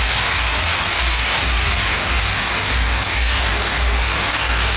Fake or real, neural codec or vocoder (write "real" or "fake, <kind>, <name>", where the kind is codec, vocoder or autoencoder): fake, codec, DAC